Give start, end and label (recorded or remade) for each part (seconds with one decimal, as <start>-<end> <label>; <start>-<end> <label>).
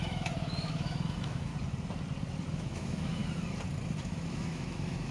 0.0-1.5 remade; 1.5-2.5 recorded; 2.5-3.2 remade; 3.2-4.0 recorded; 4.0-5.1 remade